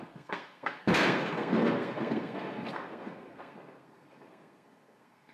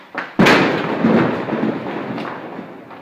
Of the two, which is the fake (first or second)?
first